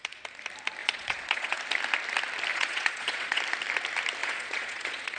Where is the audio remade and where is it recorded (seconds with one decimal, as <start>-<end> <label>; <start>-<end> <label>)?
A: 0.0-0.8 recorded; 0.8-1.6 remade; 1.6-2.5 recorded; 2.5-3.4 remade; 3.4-4.2 recorded; 4.2-5.2 remade